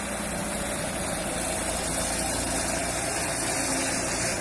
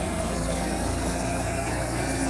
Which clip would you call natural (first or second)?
first